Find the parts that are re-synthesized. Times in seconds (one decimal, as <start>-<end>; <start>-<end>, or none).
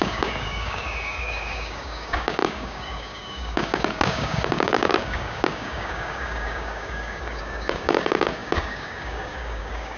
0.0-10.0